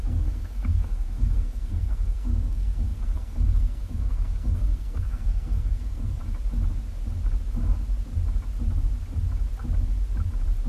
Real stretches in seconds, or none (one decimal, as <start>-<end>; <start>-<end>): 6.2-10.7